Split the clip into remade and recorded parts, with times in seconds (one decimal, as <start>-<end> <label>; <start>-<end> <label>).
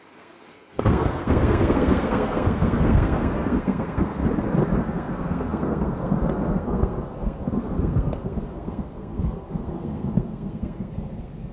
0.0-4.2 remade; 4.2-4.8 recorded; 4.8-11.5 remade